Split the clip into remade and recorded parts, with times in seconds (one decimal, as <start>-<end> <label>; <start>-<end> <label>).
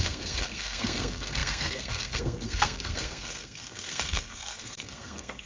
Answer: 0.0-5.5 remade